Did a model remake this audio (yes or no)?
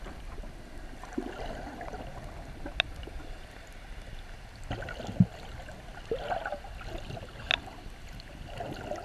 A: no